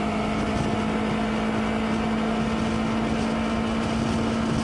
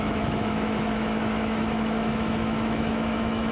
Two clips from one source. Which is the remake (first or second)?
second